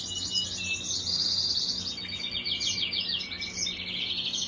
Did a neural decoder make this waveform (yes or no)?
no